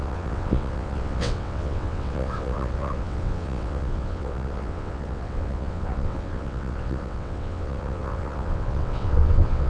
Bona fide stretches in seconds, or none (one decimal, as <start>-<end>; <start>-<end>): none

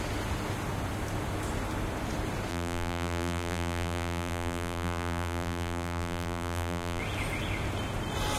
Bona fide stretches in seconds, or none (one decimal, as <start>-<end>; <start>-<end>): 0.0-2.5; 7.0-8.4

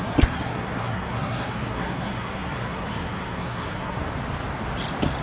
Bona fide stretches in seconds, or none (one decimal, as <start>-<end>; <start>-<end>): 4.1-5.2

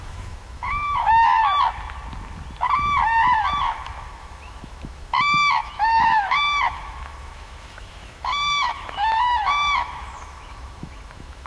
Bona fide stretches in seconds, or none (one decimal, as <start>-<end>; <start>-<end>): 1.4-3.5